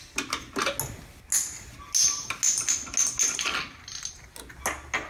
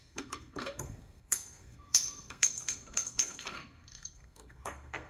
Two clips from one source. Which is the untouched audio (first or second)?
first